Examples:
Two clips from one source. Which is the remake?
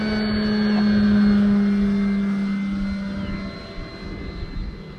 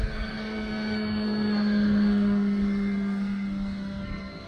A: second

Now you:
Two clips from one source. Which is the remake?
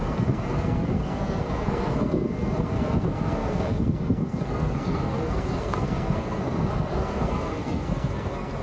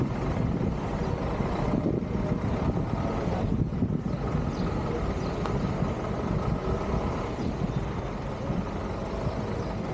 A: first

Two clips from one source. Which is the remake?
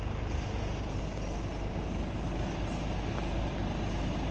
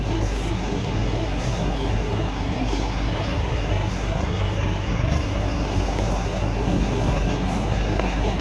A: second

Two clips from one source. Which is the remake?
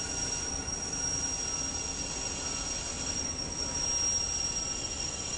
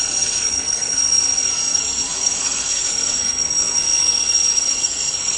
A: second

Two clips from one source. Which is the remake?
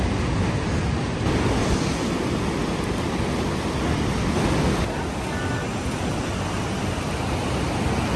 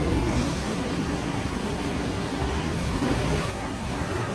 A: second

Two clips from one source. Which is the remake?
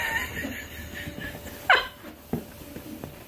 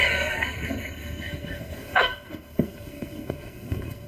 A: second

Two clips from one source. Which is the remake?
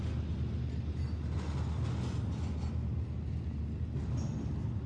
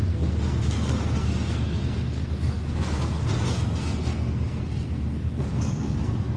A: second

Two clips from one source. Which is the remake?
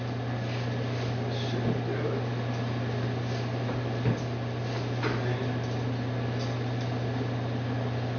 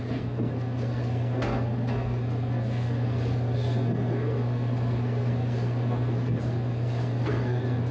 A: second